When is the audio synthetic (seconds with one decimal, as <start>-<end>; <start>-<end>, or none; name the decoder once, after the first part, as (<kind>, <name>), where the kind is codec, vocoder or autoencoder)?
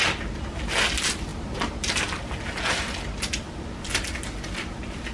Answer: none